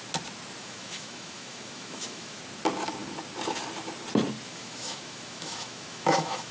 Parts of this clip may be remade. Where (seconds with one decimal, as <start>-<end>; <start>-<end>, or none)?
0.6-2.4; 4.5-6.5